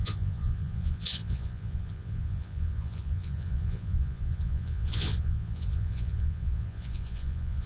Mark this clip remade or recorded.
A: remade